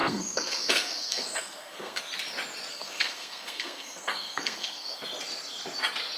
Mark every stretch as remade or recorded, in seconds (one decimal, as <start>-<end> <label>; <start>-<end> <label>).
0.0-2.0 remade; 2.0-2.7 recorded; 2.7-5.0 remade; 5.0-6.2 recorded